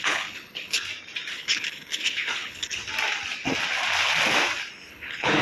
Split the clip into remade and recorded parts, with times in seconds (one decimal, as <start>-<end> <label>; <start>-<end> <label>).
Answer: 0.0-0.8 remade; 0.8-1.3 recorded; 1.3-2.8 remade; 2.8-4.9 recorded; 4.9-5.4 remade